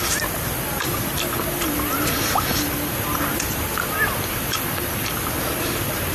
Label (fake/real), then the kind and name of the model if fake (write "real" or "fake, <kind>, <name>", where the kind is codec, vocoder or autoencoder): real